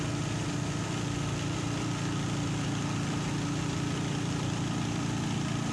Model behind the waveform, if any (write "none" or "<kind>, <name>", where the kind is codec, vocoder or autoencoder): none